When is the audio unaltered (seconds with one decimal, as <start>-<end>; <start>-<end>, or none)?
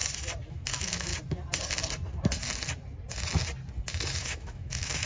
0.0-0.5; 1.1-4.2